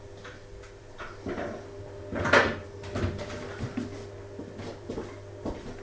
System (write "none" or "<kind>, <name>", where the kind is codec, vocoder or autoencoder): none